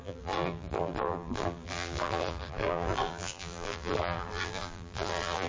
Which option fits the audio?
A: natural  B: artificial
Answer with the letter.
B